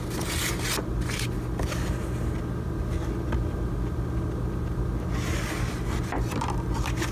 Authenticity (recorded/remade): recorded